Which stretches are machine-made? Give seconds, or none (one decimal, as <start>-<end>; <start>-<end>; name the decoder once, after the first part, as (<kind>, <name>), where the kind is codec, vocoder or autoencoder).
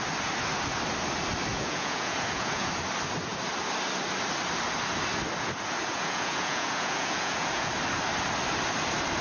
1.5-2.7 (vocoder, Vocos); 5.8-7.7